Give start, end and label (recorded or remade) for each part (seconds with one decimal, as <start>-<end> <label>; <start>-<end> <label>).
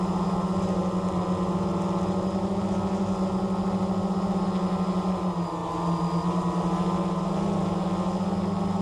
0.0-8.8 recorded